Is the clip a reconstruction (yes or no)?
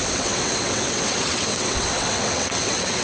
yes